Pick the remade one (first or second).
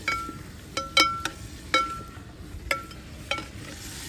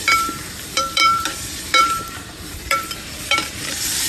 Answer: second